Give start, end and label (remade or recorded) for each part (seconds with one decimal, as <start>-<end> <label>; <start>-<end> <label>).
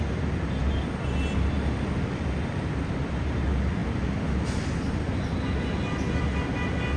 0.0-7.0 recorded